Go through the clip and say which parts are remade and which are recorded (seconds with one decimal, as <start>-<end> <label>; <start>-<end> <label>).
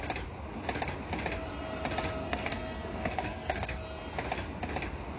0.0-2.2 recorded; 2.2-3.8 remade; 3.8-5.2 recorded